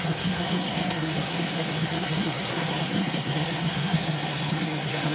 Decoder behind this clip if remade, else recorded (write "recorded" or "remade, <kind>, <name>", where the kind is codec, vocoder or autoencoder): remade, codec, SNAC